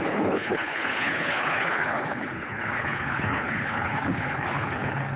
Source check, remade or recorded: remade